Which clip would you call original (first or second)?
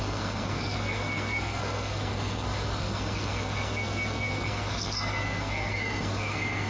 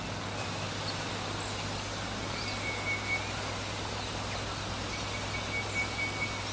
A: second